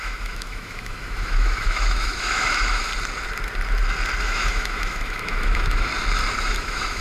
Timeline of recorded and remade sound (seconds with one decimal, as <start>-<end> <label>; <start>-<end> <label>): 0.0-2.9 remade; 2.9-4.2 recorded; 4.2-5.9 remade; 5.9-6.4 recorded; 6.4-7.0 remade